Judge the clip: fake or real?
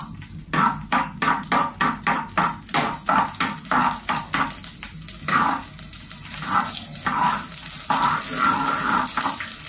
real